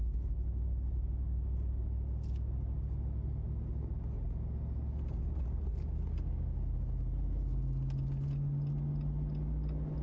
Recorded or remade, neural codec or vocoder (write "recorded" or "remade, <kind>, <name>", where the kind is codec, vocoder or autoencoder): recorded